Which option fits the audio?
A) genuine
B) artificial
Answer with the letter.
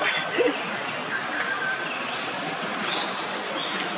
A